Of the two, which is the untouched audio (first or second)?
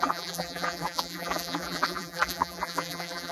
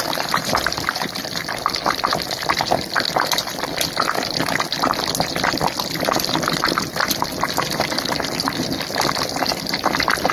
second